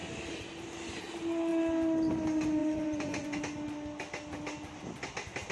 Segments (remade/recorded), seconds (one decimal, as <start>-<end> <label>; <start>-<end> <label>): 0.0-2.6 recorded; 2.6-3.4 remade; 3.4-5.5 recorded